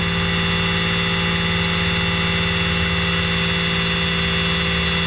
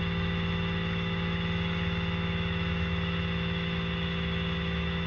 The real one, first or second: first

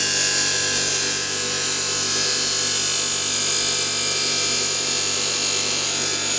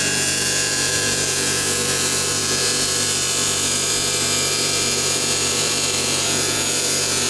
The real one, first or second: first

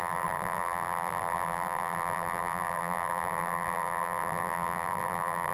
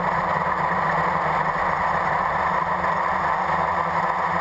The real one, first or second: second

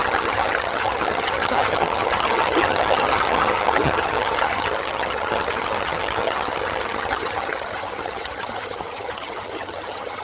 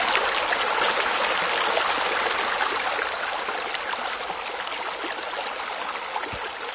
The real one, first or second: second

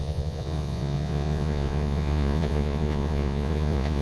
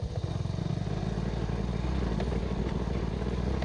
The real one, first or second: second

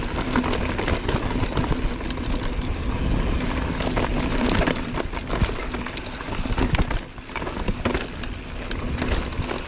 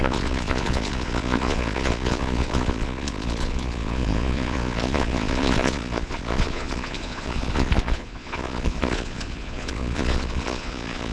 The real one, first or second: first